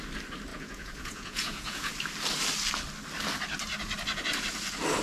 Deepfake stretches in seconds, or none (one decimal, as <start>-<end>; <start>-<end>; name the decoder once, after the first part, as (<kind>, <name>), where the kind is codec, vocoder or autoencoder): 0.5-1.9 (vocoder, Vocos)